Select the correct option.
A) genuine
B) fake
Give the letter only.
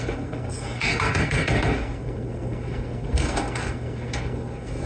B